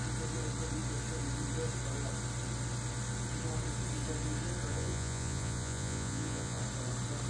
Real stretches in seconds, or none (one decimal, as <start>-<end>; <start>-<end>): 0.0-4.7; 6.6-7.3